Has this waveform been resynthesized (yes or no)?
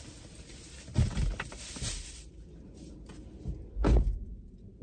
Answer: no